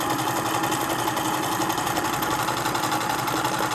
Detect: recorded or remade recorded